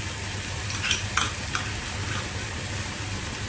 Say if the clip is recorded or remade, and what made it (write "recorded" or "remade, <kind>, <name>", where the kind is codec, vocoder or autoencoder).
recorded